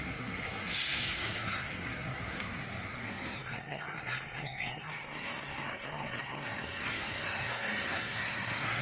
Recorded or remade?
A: remade